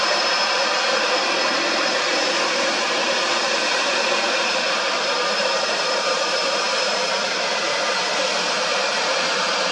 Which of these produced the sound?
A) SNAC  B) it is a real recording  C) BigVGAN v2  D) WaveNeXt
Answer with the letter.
C